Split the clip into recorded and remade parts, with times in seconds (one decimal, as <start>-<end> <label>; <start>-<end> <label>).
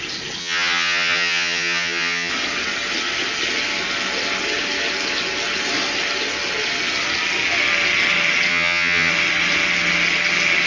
0.0-0.4 recorded; 0.4-2.3 remade; 2.3-8.5 recorded; 8.5-9.1 remade; 9.1-10.7 recorded